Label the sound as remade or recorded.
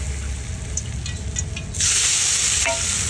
recorded